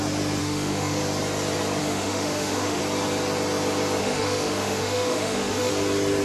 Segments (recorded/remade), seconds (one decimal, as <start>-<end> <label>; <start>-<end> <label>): 0.0-0.4 recorded; 0.4-1.0 remade; 1.0-1.8 recorded; 1.8-2.8 remade; 2.8-4.0 recorded; 4.0-5.7 remade; 5.7-6.2 recorded